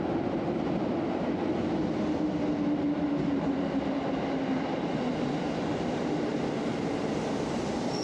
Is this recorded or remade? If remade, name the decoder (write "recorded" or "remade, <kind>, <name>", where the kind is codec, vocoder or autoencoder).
recorded